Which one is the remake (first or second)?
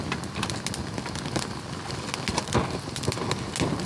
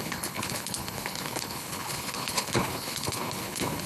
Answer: second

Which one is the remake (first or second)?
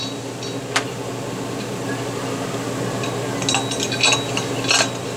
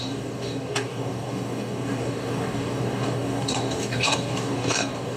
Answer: second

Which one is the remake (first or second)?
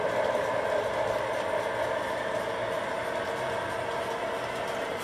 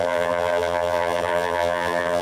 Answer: second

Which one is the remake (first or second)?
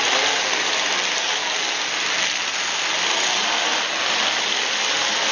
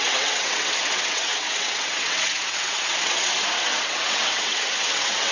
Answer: second